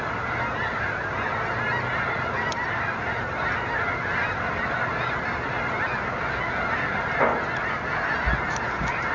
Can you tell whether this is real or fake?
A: real